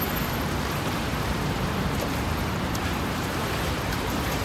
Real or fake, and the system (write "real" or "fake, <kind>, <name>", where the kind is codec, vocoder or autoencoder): fake, vocoder, BigVGAN v2